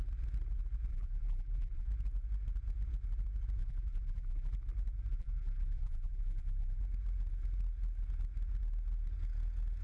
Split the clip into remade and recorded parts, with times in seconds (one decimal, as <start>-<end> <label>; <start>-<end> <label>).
0.0-0.9 recorded; 0.9-1.9 remade; 1.9-3.6 recorded; 3.6-4.5 remade; 4.5-5.1 recorded; 5.1-6.8 remade; 6.8-9.8 recorded